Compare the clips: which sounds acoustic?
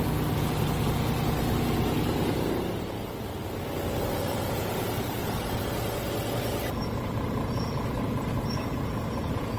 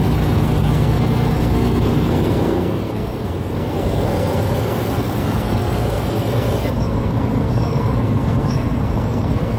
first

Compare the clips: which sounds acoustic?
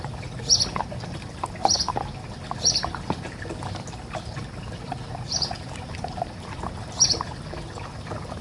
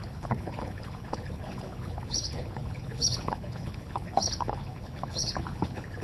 first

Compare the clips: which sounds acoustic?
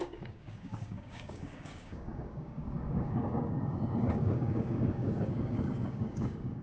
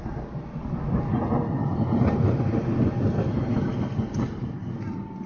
second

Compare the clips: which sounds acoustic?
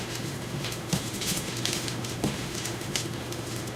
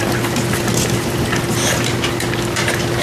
second